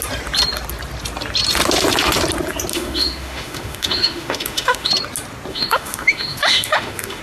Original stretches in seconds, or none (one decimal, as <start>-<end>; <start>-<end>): 0.0-2.7; 4.9-5.5